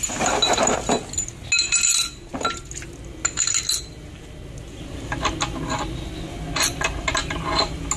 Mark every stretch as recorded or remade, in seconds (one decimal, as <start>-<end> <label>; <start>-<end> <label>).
0.0-8.0 recorded